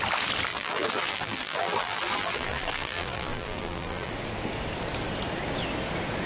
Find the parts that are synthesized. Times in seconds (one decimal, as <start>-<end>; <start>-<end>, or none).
0.5-4.1